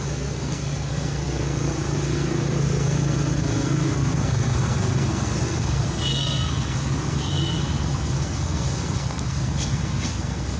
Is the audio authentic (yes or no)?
no